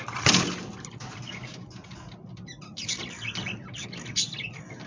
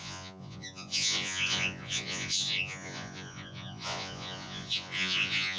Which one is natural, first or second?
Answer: first